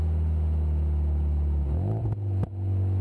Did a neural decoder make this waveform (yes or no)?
no